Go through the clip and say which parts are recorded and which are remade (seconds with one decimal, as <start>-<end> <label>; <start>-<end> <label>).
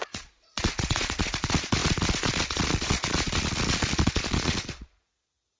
0.0-5.6 remade